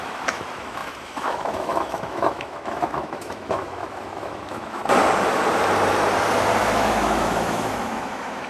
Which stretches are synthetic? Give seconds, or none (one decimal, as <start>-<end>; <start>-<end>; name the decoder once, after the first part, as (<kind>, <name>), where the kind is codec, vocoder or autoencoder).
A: 0.0-4.8 (autoencoder, DAC-VAE); 6.6-8.5